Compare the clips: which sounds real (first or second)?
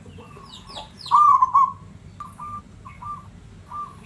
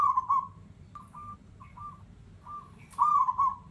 first